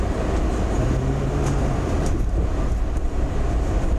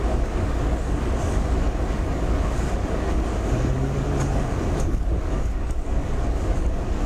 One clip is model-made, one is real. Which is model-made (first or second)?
second